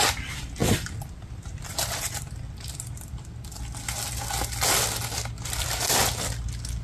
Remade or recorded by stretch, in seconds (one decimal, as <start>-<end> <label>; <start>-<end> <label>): 0.0-0.6 recorded; 0.6-2.0 remade; 2.0-6.8 recorded